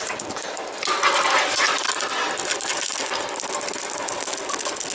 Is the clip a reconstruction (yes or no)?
no